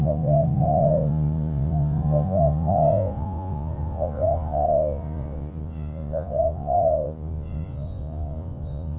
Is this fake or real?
fake